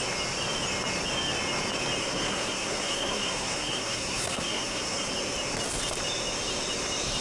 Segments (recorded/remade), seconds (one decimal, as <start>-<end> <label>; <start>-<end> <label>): 0.0-2.0 recorded; 2.0-5.1 remade; 5.1-7.2 recorded